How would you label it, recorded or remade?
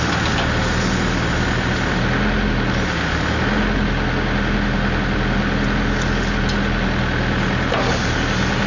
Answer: recorded